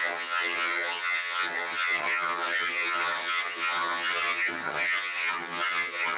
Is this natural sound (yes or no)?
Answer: no